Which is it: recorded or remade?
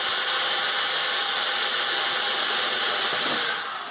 recorded